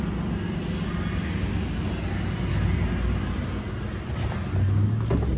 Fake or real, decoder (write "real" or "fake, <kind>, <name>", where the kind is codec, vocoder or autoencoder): real